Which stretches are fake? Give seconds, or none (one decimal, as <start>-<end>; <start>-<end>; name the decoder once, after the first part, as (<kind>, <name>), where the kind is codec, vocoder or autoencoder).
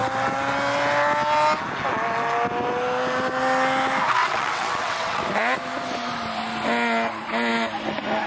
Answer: 4.2-5.2 (vocoder, WaveNeXt)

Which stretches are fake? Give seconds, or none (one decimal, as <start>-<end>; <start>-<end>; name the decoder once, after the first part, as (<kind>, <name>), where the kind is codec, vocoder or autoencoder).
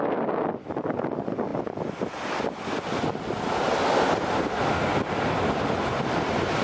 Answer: none